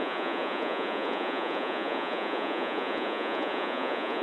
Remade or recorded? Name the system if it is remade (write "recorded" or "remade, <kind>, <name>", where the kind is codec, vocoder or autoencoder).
remade, vocoder, Vocos